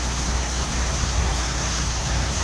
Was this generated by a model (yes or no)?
yes